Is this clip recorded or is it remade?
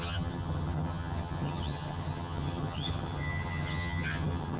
remade